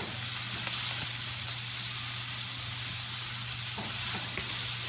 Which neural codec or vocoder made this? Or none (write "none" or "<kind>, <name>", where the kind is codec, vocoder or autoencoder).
none